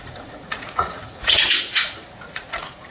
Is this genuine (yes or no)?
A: no